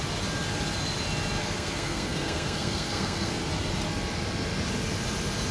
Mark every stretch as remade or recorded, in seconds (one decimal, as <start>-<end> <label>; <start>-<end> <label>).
0.0-1.4 recorded; 1.4-3.3 remade; 3.3-5.5 recorded